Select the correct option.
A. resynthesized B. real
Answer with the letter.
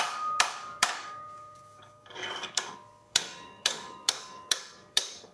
A